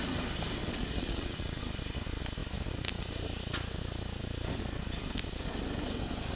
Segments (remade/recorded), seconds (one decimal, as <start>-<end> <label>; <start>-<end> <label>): 0.0-0.6 recorded; 0.6-1.6 remade; 1.6-6.4 recorded

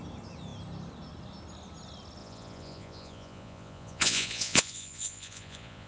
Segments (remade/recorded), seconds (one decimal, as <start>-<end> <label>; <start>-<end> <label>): 0.0-2.2 recorded; 2.2-5.9 remade

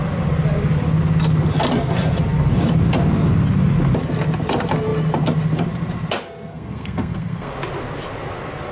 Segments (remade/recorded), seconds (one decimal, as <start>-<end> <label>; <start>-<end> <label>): 0.0-6.5 recorded; 6.5-7.5 remade; 7.5-8.7 recorded

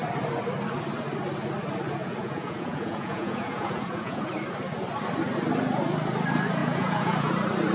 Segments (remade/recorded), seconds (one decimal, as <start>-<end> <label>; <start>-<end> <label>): 0.0-2.0 recorded; 2.0-4.2 remade; 4.2-6.6 recorded; 6.6-7.3 remade; 7.3-7.7 recorded

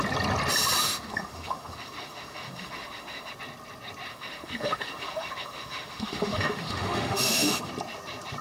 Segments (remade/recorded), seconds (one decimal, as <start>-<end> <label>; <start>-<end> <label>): 0.0-0.8 recorded; 0.8-3.3 remade; 3.3-4.1 recorded; 4.1-7.7 remade; 7.7-8.4 recorded

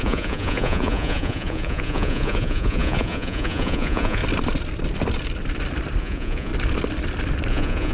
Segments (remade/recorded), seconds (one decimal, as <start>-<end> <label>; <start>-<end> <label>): 0.0-4.2 remade; 4.2-6.0 recorded; 6.0-6.5 remade; 6.5-7.5 recorded; 7.5-7.9 remade

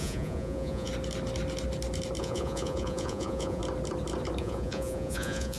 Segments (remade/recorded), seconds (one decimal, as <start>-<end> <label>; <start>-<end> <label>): 0.0-0.9 remade; 0.9-2.2 recorded; 2.2-3.6 remade; 3.6-4.4 recorded; 4.4-5.6 remade

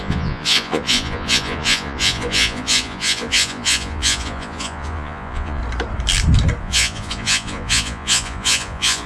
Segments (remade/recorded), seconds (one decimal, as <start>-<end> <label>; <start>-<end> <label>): 0.0-5.6 remade; 5.6-6.6 recorded; 6.6-9.1 remade